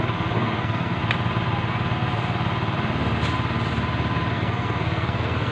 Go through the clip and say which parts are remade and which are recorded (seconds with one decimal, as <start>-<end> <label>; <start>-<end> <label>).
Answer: 0.0-1.0 remade; 1.0-4.3 recorded; 4.3-5.5 remade